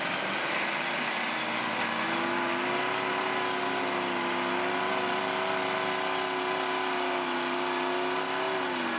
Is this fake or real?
real